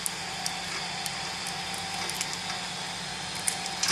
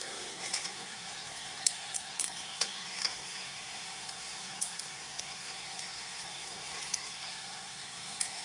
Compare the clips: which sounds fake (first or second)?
second